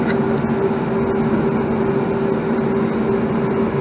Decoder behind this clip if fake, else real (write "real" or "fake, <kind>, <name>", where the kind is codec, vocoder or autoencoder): real